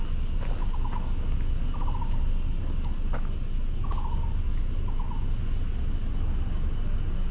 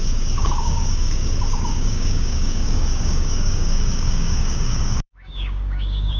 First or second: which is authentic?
first